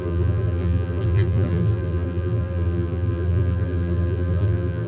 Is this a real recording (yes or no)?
no